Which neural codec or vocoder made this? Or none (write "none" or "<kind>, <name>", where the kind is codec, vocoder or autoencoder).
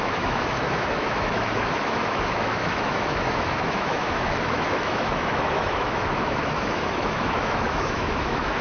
autoencoder, DAC-VAE